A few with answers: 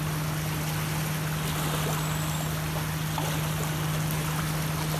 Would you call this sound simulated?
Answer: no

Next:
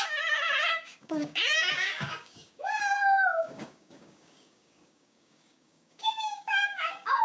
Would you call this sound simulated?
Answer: yes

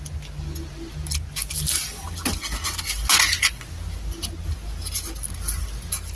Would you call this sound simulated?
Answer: no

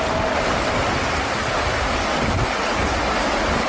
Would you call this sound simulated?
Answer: no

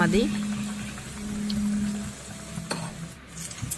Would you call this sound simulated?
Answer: no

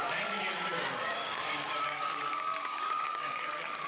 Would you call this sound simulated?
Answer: yes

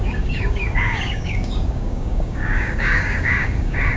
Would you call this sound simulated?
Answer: yes